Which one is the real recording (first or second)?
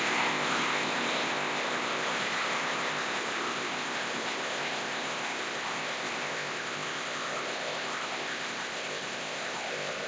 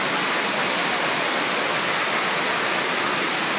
second